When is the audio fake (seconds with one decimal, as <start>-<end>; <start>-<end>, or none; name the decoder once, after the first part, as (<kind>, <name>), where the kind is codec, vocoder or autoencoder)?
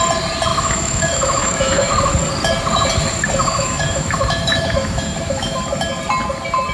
0.5-1.9 (autoencoder, DAC-VAE); 3.4-5.6